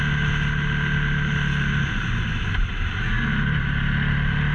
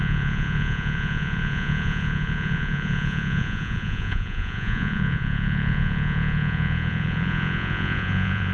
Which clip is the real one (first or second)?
first